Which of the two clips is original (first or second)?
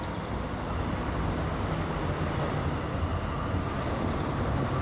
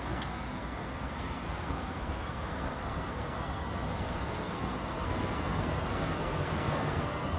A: first